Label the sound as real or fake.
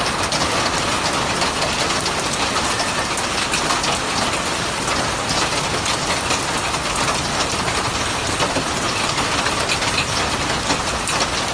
real